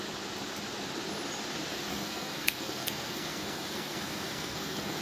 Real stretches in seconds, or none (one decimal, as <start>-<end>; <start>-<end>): 0.0-1.9